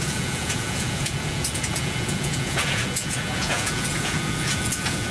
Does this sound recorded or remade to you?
remade